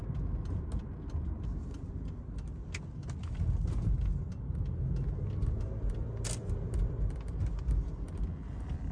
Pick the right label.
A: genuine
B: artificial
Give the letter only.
A